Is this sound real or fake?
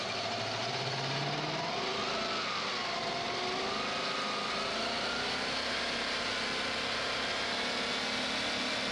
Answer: real